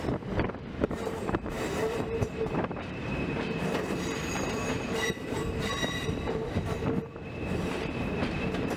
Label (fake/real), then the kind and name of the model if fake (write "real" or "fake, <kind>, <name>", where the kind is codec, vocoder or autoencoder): fake, vocoder, BigVGAN v2